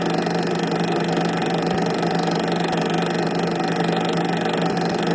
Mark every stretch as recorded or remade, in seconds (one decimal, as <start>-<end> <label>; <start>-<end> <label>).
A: 0.0-5.1 recorded